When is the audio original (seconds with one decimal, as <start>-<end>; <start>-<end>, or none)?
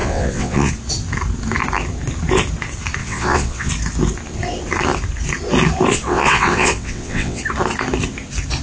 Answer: 0.7-3.0; 3.7-5.9; 7.4-8.6